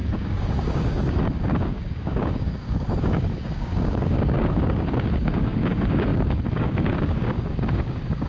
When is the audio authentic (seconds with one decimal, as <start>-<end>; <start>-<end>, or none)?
none